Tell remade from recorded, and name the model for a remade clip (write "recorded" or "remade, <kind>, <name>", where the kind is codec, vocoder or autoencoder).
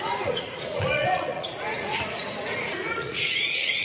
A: remade, vocoder, Vocos